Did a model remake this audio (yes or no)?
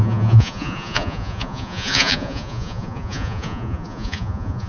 yes